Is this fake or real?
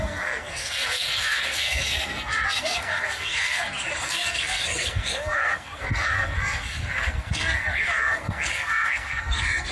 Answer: fake